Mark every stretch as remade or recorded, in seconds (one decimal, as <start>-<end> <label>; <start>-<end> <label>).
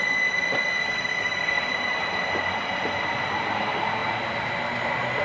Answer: 0.0-0.8 recorded; 0.8-1.7 remade; 1.7-5.2 recorded